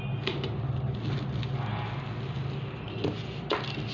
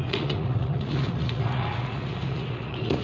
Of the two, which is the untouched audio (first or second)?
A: first